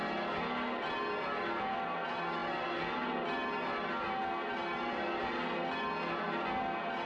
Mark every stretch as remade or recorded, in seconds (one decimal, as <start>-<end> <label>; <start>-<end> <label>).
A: 0.0-7.1 recorded